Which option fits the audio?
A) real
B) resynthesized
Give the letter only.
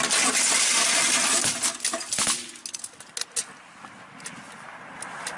A